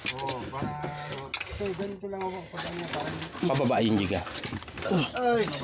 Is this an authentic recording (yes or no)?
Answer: yes